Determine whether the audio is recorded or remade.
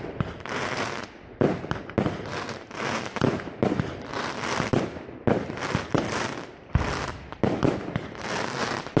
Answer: recorded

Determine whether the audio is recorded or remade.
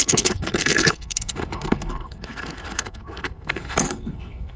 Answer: remade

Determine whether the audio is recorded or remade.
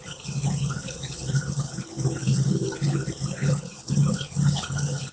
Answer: remade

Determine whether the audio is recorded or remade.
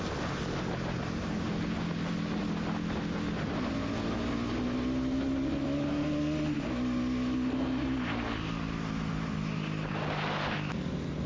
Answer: recorded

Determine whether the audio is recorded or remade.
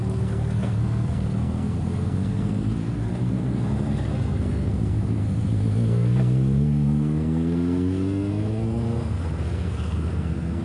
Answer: remade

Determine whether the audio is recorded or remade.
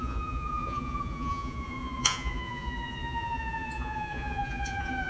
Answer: remade